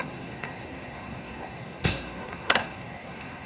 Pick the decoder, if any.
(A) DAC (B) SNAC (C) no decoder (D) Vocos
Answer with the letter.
B